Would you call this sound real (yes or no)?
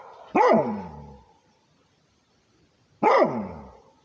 no